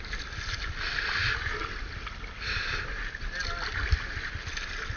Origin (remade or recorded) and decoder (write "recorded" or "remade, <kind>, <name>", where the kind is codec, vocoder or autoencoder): recorded